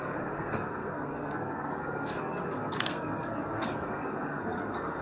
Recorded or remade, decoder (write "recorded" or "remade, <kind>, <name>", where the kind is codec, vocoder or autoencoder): remade, codec, SNAC